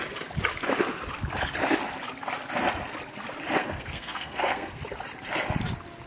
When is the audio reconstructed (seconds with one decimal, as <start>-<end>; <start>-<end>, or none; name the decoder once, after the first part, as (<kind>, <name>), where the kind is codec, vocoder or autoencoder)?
3.6-4.8 (codec, SNAC)